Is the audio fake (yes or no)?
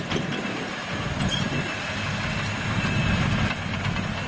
no